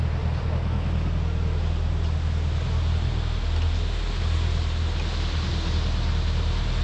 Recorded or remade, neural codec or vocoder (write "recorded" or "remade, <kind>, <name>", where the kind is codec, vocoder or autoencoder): recorded